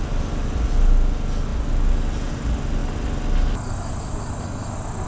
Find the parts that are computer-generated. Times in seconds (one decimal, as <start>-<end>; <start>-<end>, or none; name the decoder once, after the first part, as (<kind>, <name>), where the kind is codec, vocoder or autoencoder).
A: none